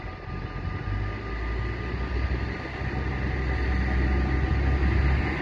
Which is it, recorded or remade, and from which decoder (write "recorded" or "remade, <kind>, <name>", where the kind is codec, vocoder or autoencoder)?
recorded